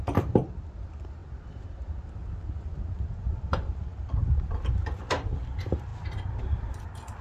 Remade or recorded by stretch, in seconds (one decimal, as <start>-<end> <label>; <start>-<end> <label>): 0.0-1.2 remade; 1.2-2.6 recorded; 2.6-7.2 remade